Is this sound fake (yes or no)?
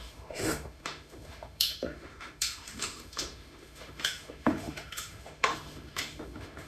yes